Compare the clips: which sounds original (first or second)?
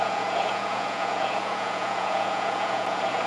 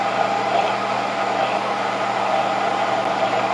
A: second